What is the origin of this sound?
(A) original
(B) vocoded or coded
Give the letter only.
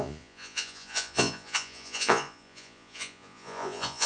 B